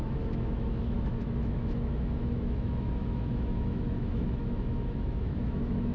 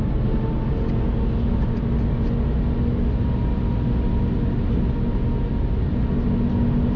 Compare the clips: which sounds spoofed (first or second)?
first